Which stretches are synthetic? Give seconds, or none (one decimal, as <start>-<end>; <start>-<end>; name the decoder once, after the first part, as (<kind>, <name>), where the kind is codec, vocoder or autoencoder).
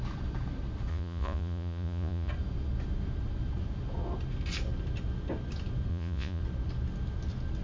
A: 0.9-2.3 (vocoder, Vocos); 5.9-6.4